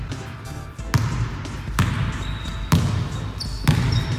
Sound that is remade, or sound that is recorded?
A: recorded